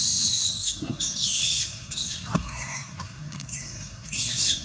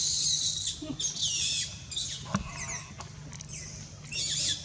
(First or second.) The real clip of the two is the second